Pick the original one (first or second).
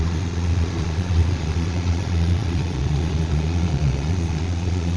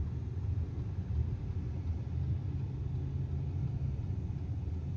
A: second